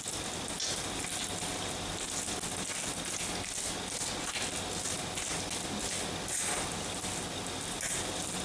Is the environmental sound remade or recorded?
recorded